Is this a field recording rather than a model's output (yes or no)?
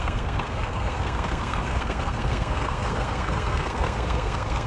no